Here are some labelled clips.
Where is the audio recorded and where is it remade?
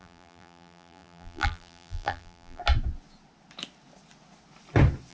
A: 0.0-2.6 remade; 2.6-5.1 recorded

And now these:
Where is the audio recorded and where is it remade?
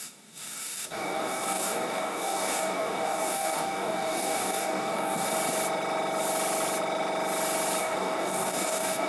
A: 0.0-5.3 remade; 5.3-7.8 recorded; 7.8-9.1 remade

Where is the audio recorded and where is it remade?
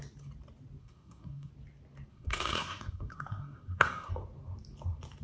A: 0.0-0.8 recorded; 0.8-1.5 remade; 1.5-2.1 recorded; 2.1-4.1 remade; 4.1-5.2 recorded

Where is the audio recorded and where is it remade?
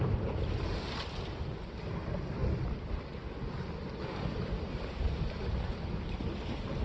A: 0.0-6.8 recorded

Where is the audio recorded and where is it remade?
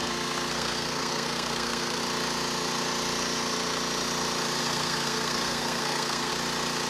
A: 0.0-2.0 remade; 2.0-4.6 recorded; 4.6-6.3 remade; 6.3-6.9 recorded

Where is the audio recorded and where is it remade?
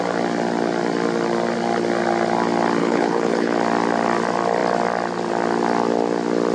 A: 0.0-2.8 recorded; 2.8-3.5 remade; 3.5-6.5 recorded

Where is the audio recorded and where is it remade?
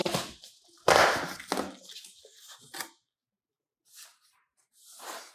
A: 0.0-0.9 remade; 0.9-4.1 recorded; 4.1-5.3 remade